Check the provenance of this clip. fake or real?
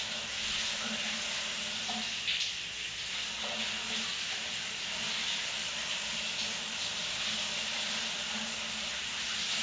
real